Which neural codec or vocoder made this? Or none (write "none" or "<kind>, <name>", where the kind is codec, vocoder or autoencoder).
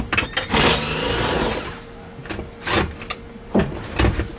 none